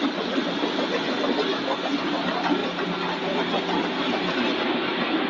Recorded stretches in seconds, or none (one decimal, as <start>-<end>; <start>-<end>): 0.0-5.3